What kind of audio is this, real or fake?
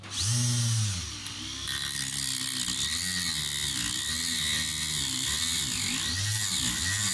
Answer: real